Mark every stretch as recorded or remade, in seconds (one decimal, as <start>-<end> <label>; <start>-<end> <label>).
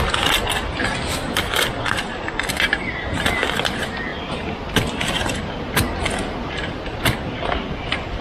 0.0-4.1 recorded; 4.1-5.4 remade; 5.4-8.2 recorded